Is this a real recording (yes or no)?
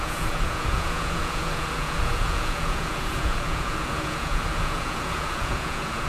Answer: no